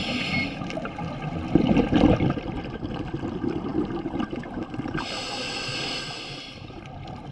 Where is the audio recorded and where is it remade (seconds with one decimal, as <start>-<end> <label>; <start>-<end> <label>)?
0.0-7.3 recorded